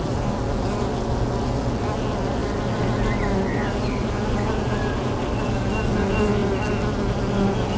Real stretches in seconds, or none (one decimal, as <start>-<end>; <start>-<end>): 0.0-7.8